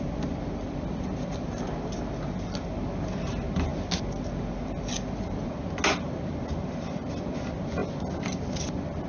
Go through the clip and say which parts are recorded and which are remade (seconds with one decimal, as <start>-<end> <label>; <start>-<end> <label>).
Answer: 0.0-9.1 recorded